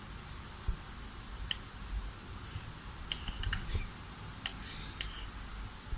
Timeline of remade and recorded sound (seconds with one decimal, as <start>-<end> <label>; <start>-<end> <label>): 0.0-6.0 recorded